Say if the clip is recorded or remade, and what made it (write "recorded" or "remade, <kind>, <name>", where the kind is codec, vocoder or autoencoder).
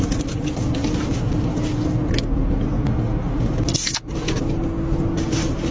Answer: recorded